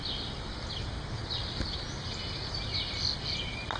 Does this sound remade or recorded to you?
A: recorded